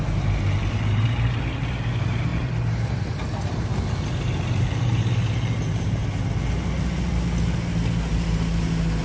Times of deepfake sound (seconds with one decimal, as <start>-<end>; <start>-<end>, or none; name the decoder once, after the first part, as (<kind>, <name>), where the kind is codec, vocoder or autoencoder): 0.0-3.7 (vocoder, BigVGAN v2); 4.6-6.0